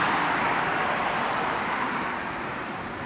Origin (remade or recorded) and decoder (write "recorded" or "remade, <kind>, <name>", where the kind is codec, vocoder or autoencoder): recorded